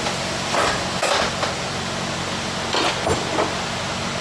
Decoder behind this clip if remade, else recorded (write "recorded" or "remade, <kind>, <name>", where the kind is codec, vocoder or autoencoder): recorded